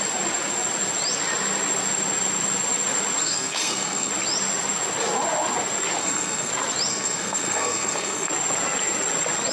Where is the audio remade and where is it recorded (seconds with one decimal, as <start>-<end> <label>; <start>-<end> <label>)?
0.0-3.2 recorded; 3.2-4.1 remade; 4.1-6.0 recorded; 6.0-6.5 remade; 6.5-6.9 recorded; 6.9-8.3 remade; 8.3-9.5 recorded